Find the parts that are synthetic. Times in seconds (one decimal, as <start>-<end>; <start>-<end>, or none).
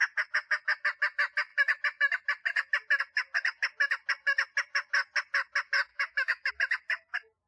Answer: 5.9-6.5